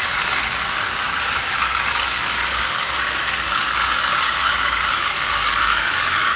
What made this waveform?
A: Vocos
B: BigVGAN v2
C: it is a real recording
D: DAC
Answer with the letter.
D